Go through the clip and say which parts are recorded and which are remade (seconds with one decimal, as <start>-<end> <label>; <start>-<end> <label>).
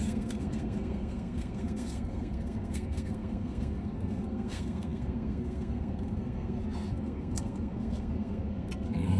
0.0-9.2 remade